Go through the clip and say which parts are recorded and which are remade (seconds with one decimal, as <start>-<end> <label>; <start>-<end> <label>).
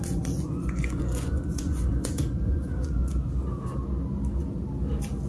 0.0-3.0 remade; 3.0-5.3 recorded